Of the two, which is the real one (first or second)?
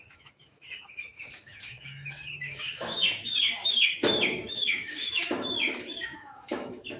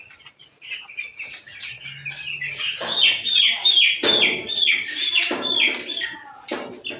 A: second